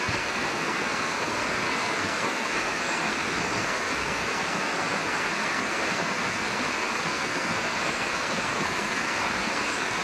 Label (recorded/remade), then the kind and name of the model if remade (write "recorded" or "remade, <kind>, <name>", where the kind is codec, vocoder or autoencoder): remade, codec, SNAC